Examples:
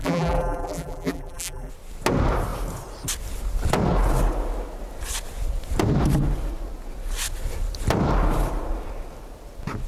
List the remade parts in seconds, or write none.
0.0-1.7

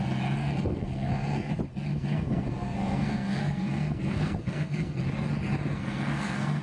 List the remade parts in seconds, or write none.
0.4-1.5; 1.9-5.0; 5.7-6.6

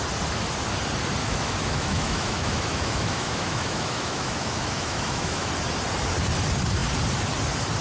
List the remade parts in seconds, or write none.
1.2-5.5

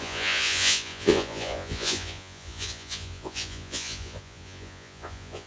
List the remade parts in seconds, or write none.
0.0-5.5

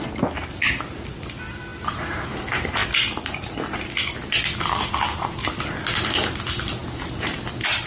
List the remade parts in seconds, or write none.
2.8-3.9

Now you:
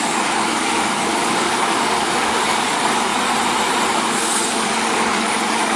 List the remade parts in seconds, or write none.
0.0-3.1; 3.9-5.8

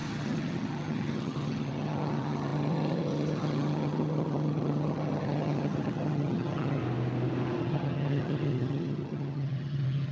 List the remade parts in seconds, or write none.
0.0-6.8; 7.6-10.1